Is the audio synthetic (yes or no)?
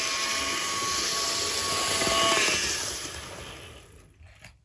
no